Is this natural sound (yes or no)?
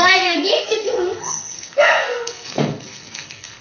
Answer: no